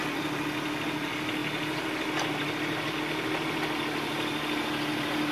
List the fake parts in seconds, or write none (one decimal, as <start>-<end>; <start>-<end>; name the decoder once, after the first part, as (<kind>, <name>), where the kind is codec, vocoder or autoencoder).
none